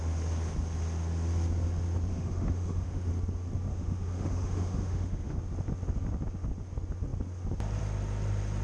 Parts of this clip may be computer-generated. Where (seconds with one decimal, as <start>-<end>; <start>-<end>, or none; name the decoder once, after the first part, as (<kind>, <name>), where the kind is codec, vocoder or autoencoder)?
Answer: 2.1-3.1 (autoencoder, DAC-VAE); 3.7-5.4